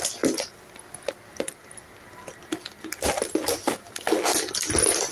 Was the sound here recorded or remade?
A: recorded